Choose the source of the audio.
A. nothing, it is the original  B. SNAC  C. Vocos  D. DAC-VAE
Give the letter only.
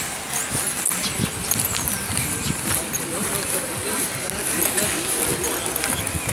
A